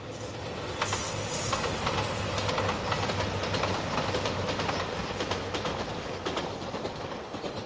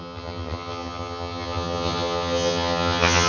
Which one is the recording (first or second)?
first